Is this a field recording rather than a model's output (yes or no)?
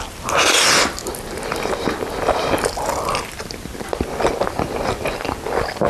yes